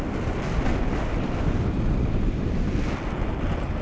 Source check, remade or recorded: recorded